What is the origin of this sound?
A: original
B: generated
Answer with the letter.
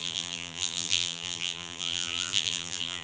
B